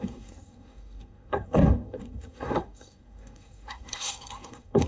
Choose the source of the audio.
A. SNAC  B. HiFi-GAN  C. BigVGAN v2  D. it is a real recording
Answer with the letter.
A